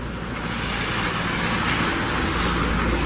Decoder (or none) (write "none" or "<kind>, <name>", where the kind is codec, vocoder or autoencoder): none